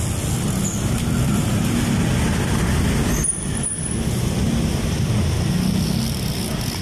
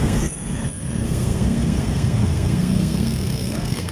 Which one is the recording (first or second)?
first